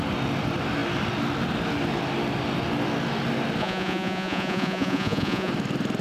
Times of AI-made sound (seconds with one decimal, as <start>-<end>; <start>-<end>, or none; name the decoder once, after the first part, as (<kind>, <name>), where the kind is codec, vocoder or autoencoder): 3.6-5.5 (vocoder, Vocos)